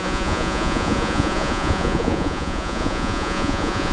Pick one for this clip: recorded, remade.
remade